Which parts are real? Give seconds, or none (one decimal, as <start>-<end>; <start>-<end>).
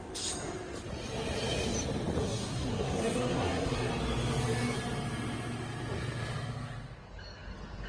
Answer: 0.0-2.2; 3.9-7.9